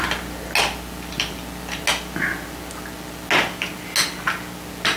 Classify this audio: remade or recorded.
recorded